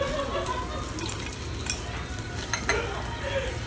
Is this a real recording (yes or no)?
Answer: yes